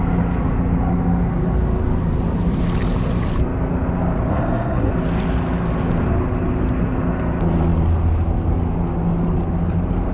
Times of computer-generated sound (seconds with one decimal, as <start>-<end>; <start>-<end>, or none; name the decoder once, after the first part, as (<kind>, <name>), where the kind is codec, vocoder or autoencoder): 4.3-4.9 (codec, SNAC)